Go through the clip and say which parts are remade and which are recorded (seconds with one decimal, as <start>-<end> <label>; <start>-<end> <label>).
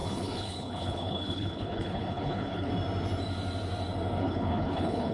0.0-2.7 remade; 2.7-4.2 recorded; 4.2-5.1 remade